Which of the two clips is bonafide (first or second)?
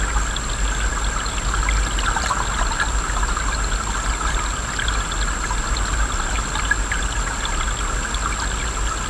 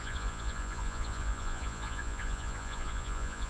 first